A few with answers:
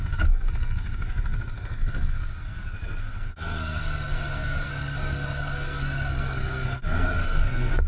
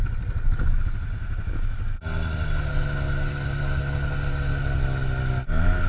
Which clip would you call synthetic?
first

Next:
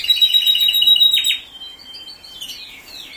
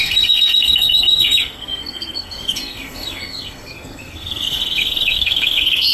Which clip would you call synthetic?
second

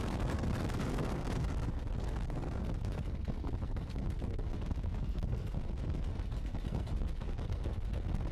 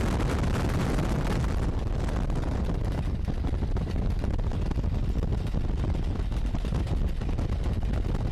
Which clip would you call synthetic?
first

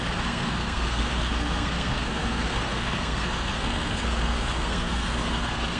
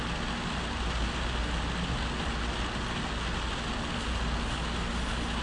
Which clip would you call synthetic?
first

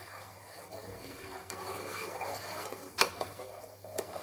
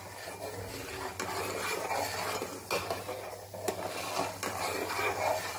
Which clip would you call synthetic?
first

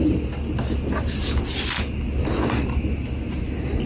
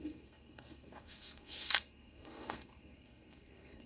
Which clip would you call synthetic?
second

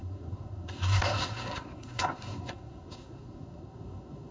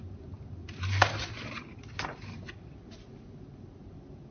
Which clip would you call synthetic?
first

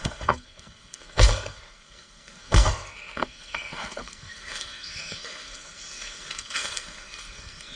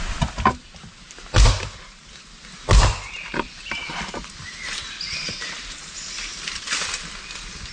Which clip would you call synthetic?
first